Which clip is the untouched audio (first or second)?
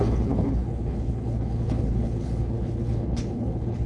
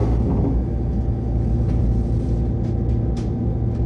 second